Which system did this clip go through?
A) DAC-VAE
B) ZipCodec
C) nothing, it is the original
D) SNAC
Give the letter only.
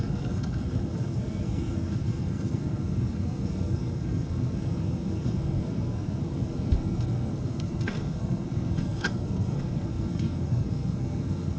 D